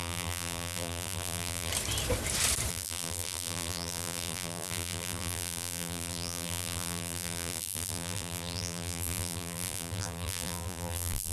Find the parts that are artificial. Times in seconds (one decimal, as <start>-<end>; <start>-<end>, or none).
0.0-1.7; 2.7-11.3